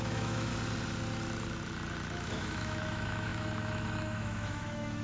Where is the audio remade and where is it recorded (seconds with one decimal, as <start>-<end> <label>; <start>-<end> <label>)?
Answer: 0.0-0.5 remade; 0.5-2.2 recorded; 2.2-5.0 remade